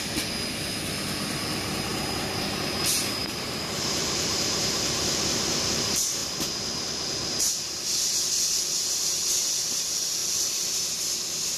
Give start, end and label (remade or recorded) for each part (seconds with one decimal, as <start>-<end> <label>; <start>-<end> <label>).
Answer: 0.0-3.2 recorded; 3.2-5.2 remade; 5.2-10.2 recorded; 10.2-10.7 remade; 10.7-11.6 recorded